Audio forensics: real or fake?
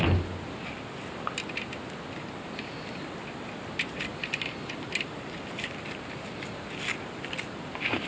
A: real